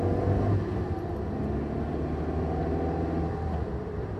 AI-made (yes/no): no